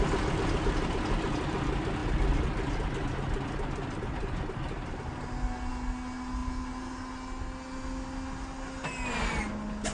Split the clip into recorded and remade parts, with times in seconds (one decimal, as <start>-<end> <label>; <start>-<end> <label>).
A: 0.0-9.9 recorded